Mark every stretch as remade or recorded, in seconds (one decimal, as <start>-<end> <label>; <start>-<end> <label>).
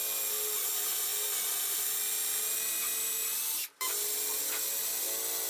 0.0-5.5 recorded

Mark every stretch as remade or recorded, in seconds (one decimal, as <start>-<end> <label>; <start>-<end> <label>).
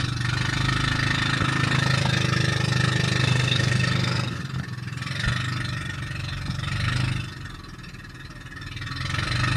0.0-3.2 recorded; 3.2-4.4 remade; 4.4-9.6 recorded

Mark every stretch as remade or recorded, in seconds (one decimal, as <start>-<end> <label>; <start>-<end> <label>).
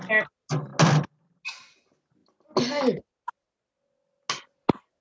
0.0-5.0 recorded